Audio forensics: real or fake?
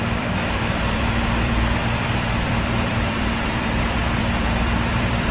fake